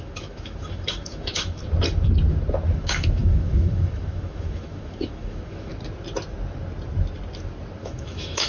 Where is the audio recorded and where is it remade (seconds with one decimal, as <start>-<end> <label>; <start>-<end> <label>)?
0.0-1.6 remade; 1.6-2.7 recorded; 2.7-5.7 remade; 5.7-7.8 recorded; 7.8-8.5 remade